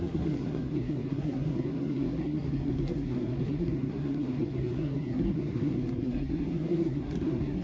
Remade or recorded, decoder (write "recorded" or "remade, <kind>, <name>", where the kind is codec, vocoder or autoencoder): remade, codec, SNAC